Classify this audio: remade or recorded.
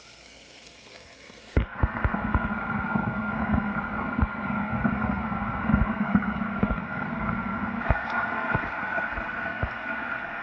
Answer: remade